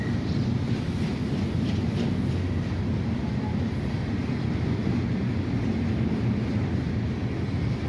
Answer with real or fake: real